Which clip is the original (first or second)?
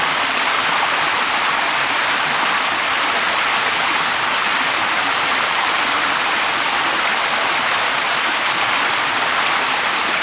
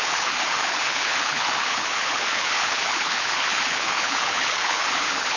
first